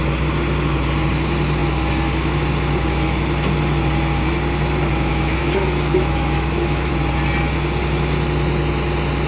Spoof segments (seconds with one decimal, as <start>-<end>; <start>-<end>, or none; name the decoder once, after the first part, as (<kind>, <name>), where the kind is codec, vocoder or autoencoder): 5.1-6.9 (autoencoder, DAC-VAE)

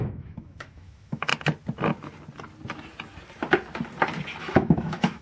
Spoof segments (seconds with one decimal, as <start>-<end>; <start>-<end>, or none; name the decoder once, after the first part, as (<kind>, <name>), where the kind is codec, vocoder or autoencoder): 0.0-1.3 (autoencoder, DAC-VAE); 4.4-5.2

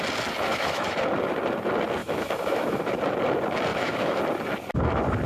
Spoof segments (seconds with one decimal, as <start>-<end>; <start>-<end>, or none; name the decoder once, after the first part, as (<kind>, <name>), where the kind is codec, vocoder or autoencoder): 0.5-1.0 (autoencoder, DAC-VAE); 2.0-2.8; 3.7-4.2

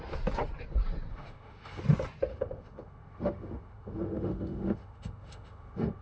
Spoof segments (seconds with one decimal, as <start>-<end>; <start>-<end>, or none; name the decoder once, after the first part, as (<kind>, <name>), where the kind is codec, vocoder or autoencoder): 1.1-1.8 (autoencoder, DAC-VAE); 2.3-6.0

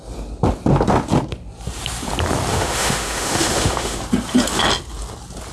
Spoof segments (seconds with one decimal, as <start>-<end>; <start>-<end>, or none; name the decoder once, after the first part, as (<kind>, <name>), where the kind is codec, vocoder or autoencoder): 2.5-4.0 (autoencoder, DAC-VAE)

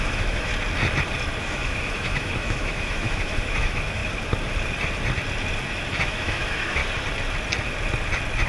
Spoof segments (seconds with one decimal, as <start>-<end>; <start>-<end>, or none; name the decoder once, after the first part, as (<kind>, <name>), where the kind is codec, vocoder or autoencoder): 0.0-0.5 (autoencoder, DAC-VAE); 1.4-4.0; 6.1-6.8